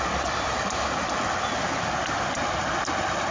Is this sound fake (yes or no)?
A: no